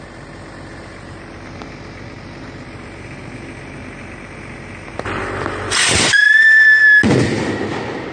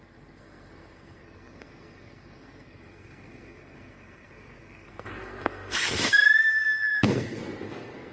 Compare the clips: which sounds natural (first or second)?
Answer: first